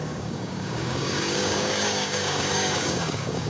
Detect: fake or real fake